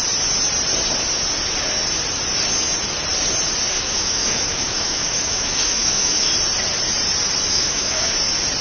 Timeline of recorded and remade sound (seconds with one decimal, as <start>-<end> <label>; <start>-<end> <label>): 0.0-3.7 recorded; 3.7-6.3 remade; 6.3-7.5 recorded; 7.5-8.1 remade; 8.1-8.6 recorded